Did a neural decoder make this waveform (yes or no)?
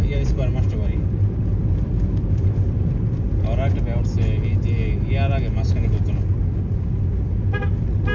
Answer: no